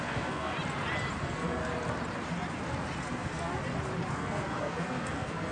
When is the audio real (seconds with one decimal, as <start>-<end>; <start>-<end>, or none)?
0.5-1.2; 1.6-3.0; 3.5-4.1